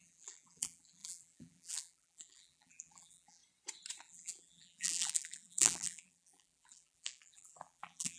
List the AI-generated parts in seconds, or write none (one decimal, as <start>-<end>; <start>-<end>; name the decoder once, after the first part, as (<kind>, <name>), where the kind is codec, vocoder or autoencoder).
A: 0.0-3.4 (vocoder, BigVGAN v2); 4.0-8.2